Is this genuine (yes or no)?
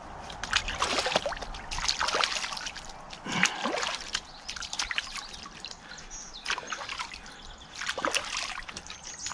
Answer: yes